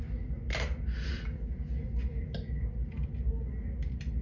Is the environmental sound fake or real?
real